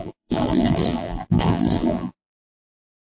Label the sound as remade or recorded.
remade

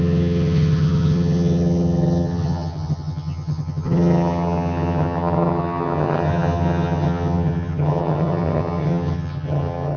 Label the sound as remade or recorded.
remade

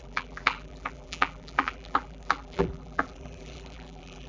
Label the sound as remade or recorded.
remade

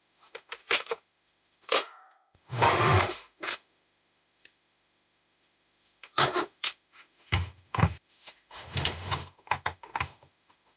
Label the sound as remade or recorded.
remade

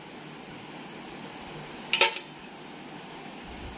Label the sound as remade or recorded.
recorded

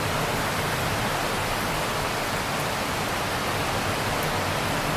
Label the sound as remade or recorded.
remade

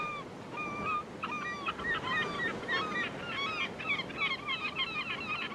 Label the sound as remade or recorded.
recorded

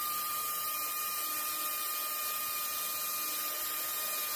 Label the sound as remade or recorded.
recorded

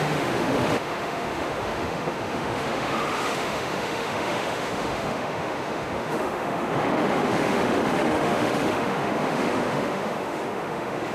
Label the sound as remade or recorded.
remade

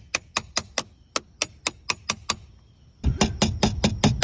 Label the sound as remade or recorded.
recorded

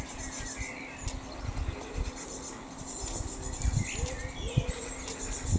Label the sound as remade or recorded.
recorded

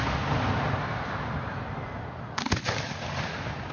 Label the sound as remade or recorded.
recorded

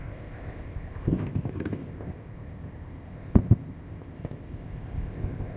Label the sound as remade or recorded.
remade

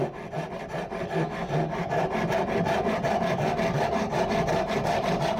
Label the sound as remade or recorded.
recorded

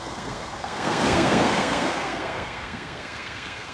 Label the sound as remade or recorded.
remade